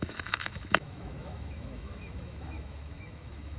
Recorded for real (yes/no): no